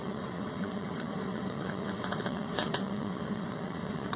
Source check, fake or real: fake